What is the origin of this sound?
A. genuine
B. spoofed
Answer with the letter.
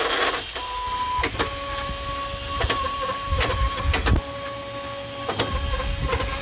A